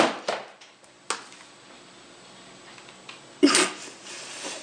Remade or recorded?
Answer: recorded